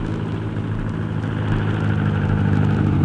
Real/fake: real